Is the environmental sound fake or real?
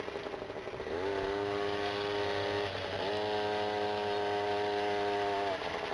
real